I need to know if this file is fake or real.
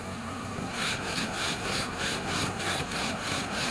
fake